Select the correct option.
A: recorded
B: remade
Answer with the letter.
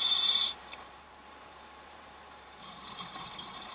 B